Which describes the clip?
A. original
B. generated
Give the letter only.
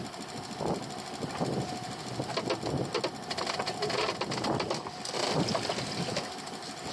A